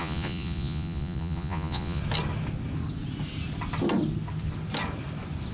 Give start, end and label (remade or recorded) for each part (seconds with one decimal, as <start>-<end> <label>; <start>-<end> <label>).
0.0-2.0 remade; 2.0-5.5 recorded